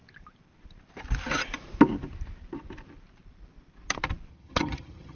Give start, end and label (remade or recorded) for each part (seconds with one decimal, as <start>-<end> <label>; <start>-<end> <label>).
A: 0.0-4.3 recorded; 4.3-5.2 remade

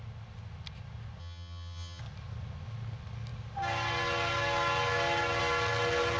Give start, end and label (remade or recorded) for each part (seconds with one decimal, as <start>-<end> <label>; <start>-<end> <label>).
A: 0.0-1.2 recorded; 1.2-2.0 remade; 2.0-6.2 recorded